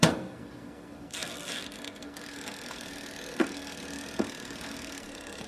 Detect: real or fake fake